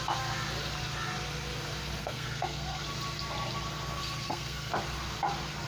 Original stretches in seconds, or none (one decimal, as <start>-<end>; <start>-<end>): 0.0-2.0; 2.8-4.0; 4.7-5.7